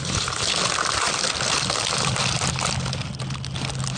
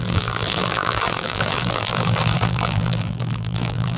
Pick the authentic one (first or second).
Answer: first